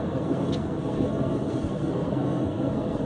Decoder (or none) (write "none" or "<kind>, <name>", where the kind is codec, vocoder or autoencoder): codec, SNAC